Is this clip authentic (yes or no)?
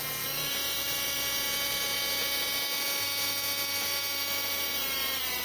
no